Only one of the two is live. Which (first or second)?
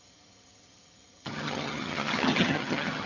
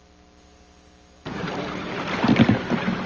second